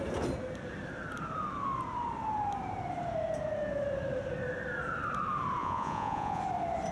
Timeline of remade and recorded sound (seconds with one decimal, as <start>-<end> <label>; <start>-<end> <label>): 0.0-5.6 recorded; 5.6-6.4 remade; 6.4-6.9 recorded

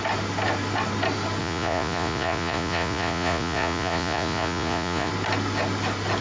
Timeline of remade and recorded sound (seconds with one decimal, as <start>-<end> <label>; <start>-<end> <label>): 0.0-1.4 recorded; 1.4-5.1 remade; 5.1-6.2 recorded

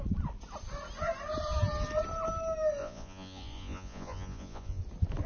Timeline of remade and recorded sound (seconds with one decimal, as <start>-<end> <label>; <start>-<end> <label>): 0.0-2.8 recorded; 2.8-4.8 remade; 4.8-5.3 recorded

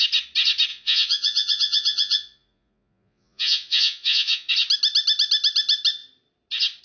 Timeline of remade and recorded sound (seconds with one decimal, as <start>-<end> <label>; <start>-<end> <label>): 0.0-0.7 recorded; 0.7-4.5 remade; 4.5-6.8 recorded

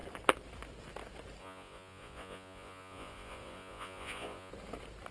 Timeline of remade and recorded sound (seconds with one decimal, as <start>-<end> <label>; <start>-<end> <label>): 0.0-1.4 recorded; 1.4-4.5 remade; 4.5-5.1 recorded

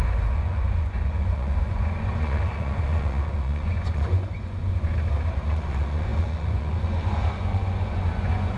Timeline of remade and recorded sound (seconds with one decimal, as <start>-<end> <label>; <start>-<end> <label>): 0.0-4.9 remade; 4.9-5.5 recorded; 5.5-8.6 remade